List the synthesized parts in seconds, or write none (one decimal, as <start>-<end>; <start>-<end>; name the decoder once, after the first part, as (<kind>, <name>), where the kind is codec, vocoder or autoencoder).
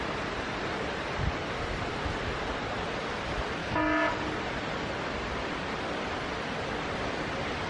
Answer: 3.6-4.2 (codec, DAC)